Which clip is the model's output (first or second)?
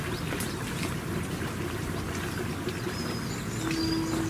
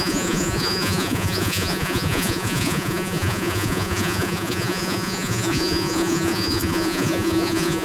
second